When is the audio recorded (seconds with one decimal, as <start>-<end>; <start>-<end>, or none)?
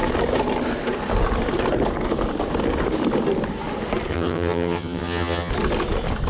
0.0-4.1; 5.5-6.3